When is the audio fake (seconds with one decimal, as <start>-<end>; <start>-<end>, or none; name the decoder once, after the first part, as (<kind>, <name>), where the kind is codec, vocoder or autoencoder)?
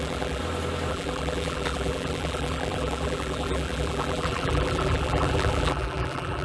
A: 0.0-0.4 (vocoder, BigVGAN v2); 0.9-6.4